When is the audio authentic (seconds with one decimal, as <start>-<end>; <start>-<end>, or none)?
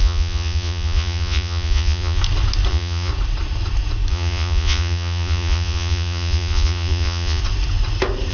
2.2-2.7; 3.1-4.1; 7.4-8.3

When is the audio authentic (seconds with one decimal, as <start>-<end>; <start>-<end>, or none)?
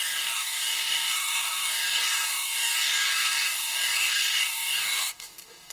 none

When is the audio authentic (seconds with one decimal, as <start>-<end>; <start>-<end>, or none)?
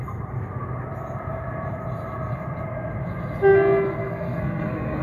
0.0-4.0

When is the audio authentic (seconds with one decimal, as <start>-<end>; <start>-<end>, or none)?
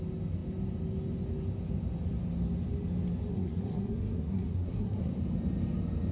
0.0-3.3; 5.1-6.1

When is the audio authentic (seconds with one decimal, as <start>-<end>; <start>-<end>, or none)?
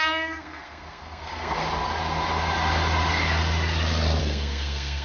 1.6-4.2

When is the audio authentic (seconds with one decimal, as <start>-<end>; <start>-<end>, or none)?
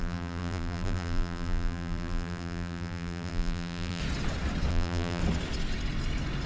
4.0-4.7; 5.2-6.5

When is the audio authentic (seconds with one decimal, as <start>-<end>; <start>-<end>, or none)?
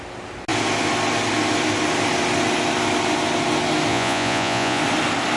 0.0-3.9; 4.8-5.4